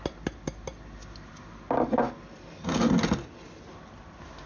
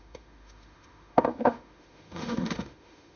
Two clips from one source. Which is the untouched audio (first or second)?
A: first